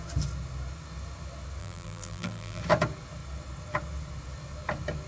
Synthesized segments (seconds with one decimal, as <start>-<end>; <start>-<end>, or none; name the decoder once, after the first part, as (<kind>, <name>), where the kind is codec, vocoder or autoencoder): 1.6-2.6 (vocoder, BigVGAN v2)